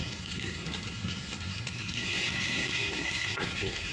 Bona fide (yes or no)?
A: no